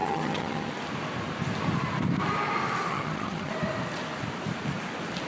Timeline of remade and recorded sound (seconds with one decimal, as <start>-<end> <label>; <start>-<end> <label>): 0.0-0.7 remade; 0.7-2.9 recorded; 2.9-3.5 remade; 3.5-5.3 recorded